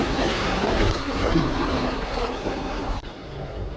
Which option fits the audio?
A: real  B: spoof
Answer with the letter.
B